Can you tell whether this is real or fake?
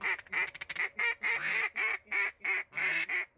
real